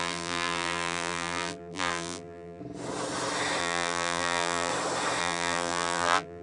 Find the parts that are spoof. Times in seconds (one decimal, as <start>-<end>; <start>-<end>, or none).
0.0-2.6; 3.6-4.7; 5.2-6.4